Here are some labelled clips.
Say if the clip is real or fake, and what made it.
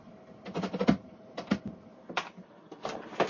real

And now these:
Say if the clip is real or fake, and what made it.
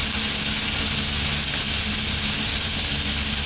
real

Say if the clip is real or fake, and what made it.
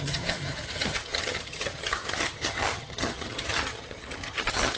fake, vocoder, HiFi-GAN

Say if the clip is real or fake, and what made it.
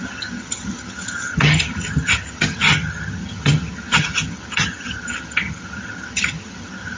fake, vocoder, HiFi-GAN